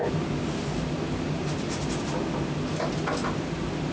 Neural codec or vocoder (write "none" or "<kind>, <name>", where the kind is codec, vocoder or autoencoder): none